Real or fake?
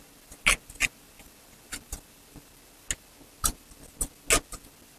real